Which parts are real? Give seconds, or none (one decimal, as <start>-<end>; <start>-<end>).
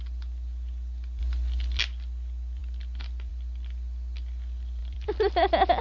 0.0-1.2; 1.8-4.8